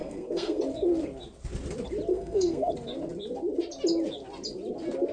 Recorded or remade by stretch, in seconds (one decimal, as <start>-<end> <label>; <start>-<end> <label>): 0.0-0.6 remade; 0.6-2.1 recorded; 2.1-2.7 remade; 2.7-5.1 recorded